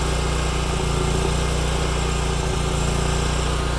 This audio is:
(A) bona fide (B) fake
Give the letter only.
A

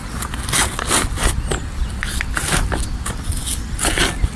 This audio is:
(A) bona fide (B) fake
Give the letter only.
A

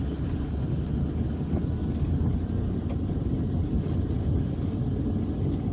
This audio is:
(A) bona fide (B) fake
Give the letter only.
A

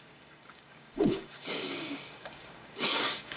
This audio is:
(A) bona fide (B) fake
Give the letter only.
B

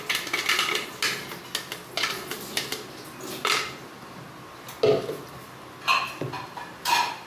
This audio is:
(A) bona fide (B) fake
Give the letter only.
A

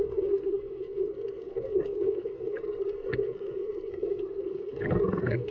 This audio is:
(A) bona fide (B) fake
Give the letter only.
B